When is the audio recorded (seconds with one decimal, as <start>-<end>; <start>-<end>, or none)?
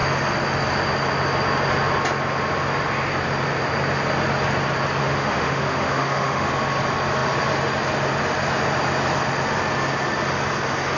0.0-5.0; 6.5-11.0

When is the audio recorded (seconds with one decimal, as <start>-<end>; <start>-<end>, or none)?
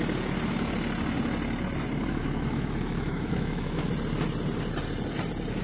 0.0-2.0; 3.9-5.6